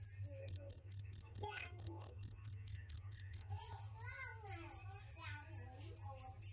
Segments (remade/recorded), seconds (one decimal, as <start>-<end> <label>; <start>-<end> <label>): 0.0-0.4 recorded; 0.4-3.5 remade; 3.5-6.5 recorded